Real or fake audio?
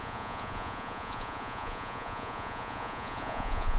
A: fake